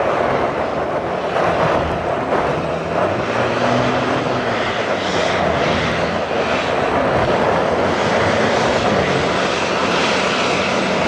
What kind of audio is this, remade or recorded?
recorded